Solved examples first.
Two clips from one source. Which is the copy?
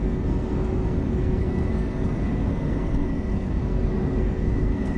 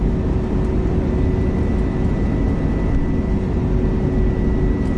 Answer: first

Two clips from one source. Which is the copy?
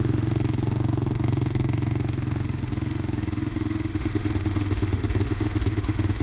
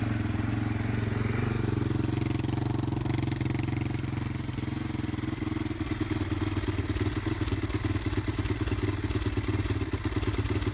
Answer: first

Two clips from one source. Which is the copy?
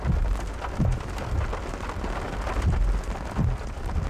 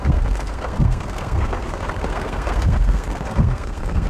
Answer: second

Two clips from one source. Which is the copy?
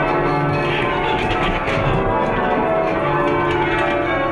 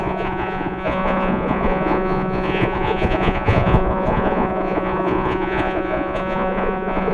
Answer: second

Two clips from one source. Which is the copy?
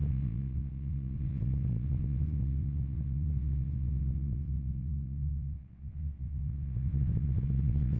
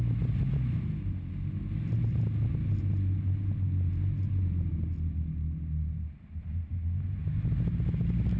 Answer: first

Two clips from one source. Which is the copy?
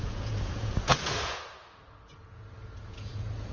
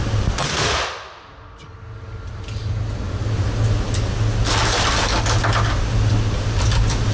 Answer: first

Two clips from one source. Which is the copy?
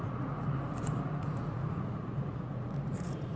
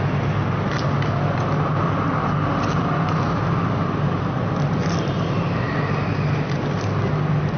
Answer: first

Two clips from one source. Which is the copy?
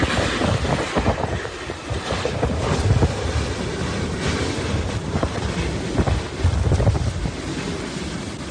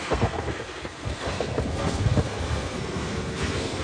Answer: second